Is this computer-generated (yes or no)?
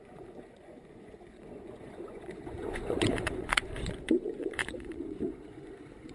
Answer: yes